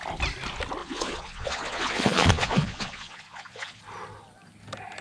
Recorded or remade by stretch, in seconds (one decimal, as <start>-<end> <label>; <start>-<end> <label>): 0.0-0.8 recorded; 0.8-3.8 remade; 3.8-5.0 recorded